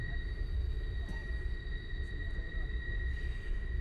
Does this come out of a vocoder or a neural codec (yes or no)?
no